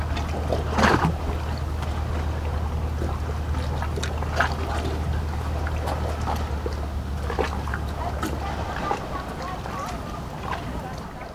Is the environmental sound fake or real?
real